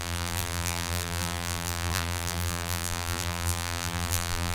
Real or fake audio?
fake